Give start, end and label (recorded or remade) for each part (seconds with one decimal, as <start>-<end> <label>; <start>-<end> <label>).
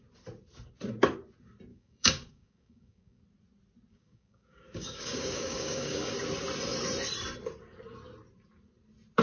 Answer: 0.0-1.7 recorded; 1.7-3.2 remade; 3.2-3.9 recorded; 3.9-6.1 remade; 6.1-9.2 recorded